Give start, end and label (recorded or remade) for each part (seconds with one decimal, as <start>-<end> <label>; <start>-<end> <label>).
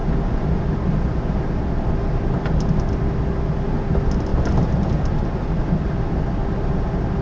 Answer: 0.0-7.2 recorded